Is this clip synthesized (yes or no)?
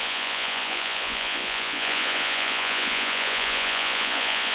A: yes